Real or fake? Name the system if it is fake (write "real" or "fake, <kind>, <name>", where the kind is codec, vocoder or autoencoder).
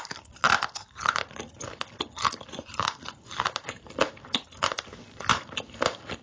real